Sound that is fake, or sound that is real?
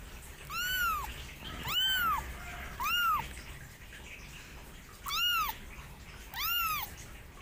real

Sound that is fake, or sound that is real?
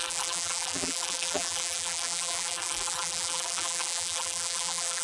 fake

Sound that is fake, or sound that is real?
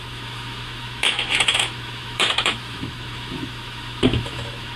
fake